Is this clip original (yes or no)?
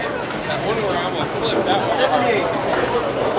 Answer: yes